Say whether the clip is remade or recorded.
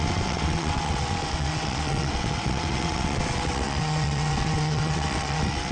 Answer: remade